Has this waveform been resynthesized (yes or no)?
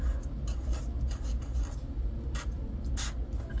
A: no